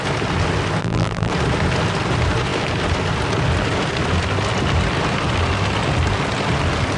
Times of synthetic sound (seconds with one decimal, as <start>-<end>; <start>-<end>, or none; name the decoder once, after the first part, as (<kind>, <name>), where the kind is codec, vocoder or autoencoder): 0.8-1.3 (vocoder, BigVGAN v2)